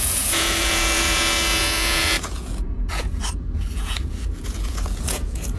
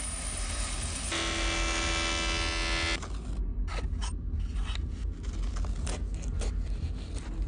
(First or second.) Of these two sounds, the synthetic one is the first